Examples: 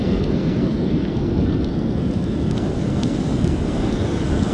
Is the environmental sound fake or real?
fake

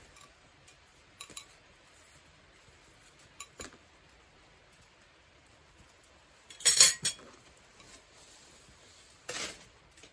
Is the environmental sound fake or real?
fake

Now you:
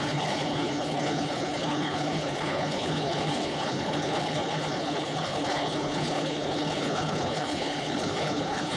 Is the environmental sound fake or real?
fake